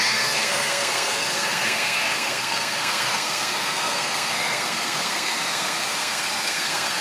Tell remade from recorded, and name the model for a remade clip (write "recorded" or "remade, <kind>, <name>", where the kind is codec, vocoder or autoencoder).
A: remade, codec, SNAC